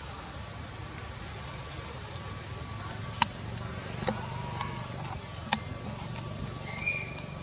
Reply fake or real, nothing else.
real